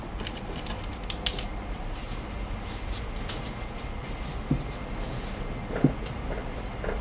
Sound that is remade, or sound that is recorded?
recorded